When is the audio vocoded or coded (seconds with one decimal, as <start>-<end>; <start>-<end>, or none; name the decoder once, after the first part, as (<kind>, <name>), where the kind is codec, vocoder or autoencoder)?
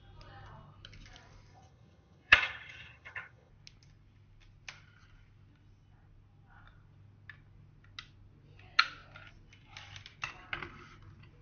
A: 1.5-3.5 (vocoder, HiFi-GAN)